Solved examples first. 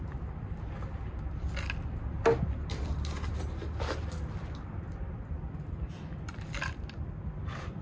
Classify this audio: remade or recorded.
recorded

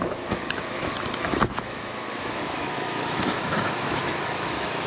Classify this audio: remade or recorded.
remade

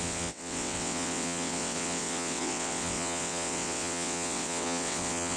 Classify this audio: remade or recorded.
remade